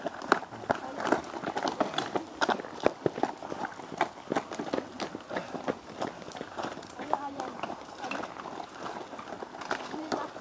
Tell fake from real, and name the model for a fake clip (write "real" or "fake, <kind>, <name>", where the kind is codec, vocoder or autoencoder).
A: real